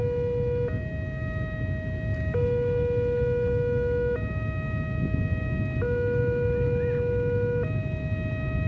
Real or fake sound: real